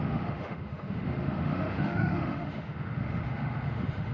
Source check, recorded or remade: remade